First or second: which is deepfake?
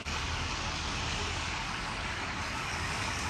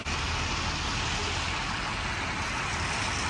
first